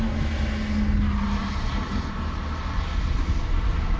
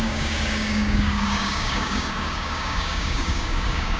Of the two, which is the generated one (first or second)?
second